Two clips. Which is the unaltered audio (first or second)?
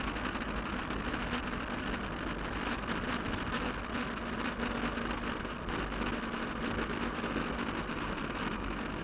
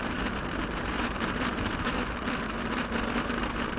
first